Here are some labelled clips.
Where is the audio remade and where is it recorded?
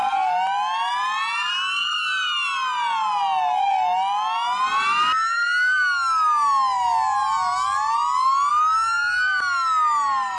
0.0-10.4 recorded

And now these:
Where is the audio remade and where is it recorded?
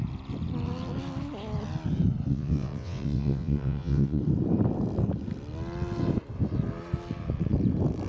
0.0-2.3 recorded; 2.3-4.2 remade; 4.2-8.1 recorded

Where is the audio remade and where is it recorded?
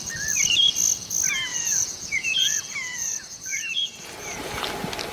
0.0-1.5 recorded; 1.5-4.6 remade; 4.6-5.1 recorded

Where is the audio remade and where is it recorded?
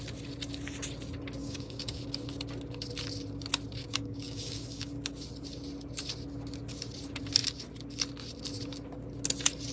0.0-1.4 recorded; 1.4-2.0 remade; 2.0-3.8 recorded; 3.8-4.9 remade; 4.9-9.7 recorded